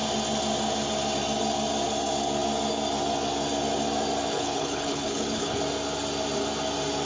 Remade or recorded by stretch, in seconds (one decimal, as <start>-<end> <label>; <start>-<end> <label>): 0.0-4.3 recorded; 4.3-5.6 remade; 5.6-7.1 recorded